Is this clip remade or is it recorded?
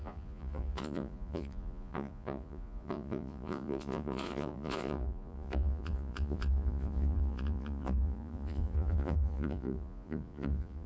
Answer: remade